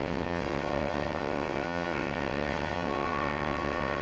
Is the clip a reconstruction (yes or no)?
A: yes